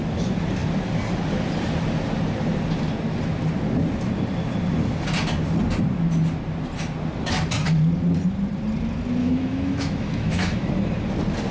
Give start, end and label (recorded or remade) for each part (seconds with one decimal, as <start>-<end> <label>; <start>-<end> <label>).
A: 0.0-9.2 recorded; 9.2-10.7 remade; 10.7-11.5 recorded